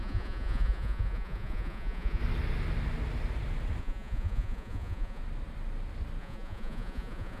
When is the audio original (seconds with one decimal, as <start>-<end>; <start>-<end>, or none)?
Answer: 2.2-3.8; 5.2-6.2